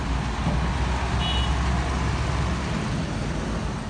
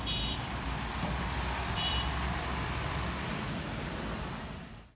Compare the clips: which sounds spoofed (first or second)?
second